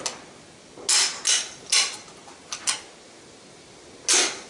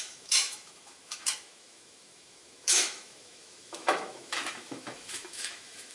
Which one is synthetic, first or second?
second